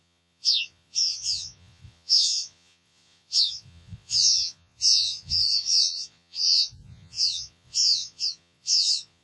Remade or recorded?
remade